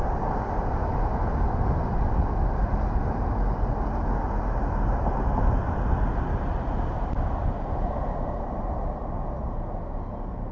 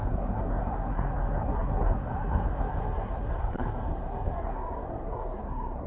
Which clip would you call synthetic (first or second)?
second